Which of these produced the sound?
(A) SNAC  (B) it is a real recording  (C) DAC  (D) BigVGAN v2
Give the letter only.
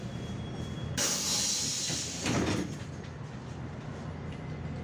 B